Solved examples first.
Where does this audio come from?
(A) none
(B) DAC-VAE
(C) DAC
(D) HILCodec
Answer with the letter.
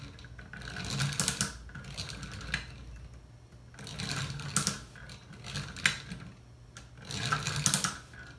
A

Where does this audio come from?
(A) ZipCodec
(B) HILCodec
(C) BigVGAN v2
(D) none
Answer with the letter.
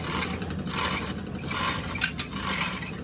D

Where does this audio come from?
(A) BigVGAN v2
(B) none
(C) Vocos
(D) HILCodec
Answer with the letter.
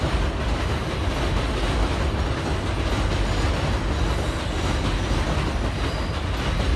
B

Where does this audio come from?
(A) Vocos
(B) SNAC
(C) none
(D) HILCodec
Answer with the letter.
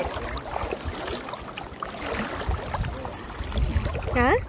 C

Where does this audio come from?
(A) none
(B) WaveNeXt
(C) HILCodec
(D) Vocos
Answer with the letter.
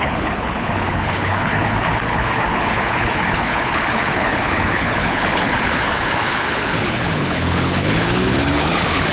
C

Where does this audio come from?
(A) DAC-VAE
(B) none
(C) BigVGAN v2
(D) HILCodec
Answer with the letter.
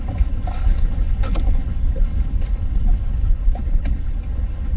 D